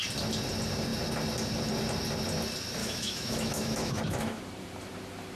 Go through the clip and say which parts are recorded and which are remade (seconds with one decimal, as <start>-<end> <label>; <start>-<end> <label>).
0.0-2.8 recorded; 2.8-4.4 remade; 4.4-5.4 recorded